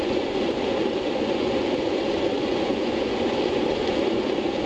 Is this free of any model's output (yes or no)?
no